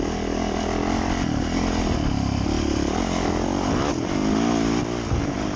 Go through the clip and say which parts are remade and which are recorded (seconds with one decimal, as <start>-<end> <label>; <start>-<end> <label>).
0.0-5.6 recorded

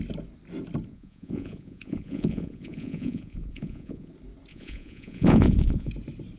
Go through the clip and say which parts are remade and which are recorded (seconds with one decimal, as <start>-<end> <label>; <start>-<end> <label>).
0.0-0.9 recorded; 0.9-4.1 remade; 4.1-4.5 recorded; 4.5-5.9 remade; 5.9-6.4 recorded

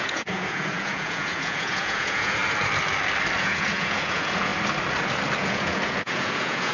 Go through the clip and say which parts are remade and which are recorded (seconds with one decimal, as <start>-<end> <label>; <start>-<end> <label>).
0.0-2.4 remade; 2.4-3.4 recorded; 3.4-4.5 remade; 4.5-5.4 recorded; 5.4-6.7 remade

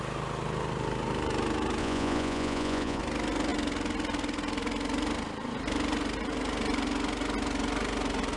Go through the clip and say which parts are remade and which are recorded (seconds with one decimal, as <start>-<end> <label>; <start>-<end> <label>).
0.0-1.8 recorded; 1.8-3.0 remade; 3.0-8.4 recorded